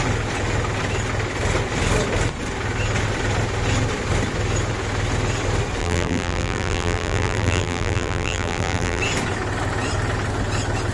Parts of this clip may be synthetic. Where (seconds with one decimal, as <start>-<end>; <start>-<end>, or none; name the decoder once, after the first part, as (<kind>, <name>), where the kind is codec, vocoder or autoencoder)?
5.8-9.0 (vocoder, BigVGAN v2)